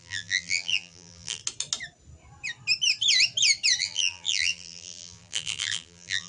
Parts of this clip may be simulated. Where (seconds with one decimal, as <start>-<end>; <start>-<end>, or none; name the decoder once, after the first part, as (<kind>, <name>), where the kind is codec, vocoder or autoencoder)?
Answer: 0.0-1.4 (vocoder, BigVGAN v2); 3.8-6.3